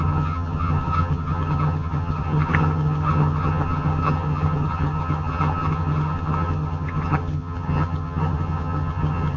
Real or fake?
fake